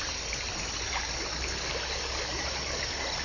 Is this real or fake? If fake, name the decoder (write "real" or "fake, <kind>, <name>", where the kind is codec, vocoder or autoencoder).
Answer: real